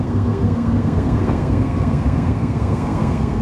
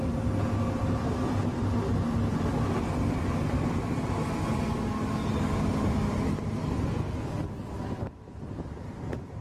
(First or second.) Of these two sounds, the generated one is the first